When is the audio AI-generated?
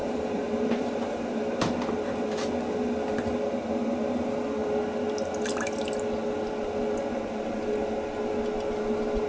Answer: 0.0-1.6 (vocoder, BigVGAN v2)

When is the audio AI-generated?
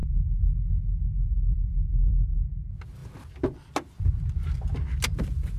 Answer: 0.0-2.2 (autoencoder, DAC-VAE)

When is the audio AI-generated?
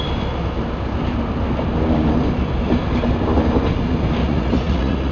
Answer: 4.2-5.1 (vocoder, Vocos)